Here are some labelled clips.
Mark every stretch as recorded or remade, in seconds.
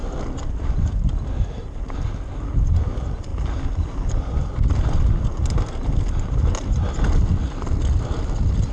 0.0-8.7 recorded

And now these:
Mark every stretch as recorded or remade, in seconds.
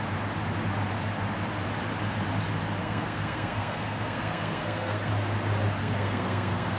0.0-2.8 recorded; 2.8-5.1 remade; 5.1-5.8 recorded; 5.8-6.8 remade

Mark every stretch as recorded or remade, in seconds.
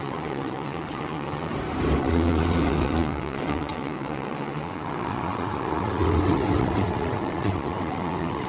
0.0-1.5 remade; 1.5-2.0 recorded; 2.0-8.5 remade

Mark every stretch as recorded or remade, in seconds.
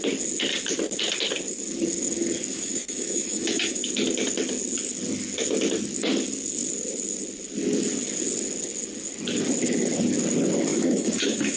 0.0-2.5 recorded; 2.5-3.9 remade; 3.9-10.7 recorded; 10.7-11.6 remade